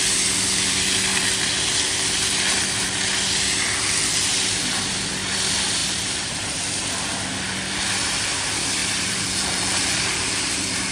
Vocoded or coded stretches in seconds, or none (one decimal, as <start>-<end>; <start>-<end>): 5.8-7.1; 8.8-10.5